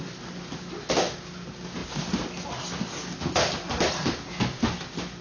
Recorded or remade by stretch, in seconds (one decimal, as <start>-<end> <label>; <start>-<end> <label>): 0.0-5.2 recorded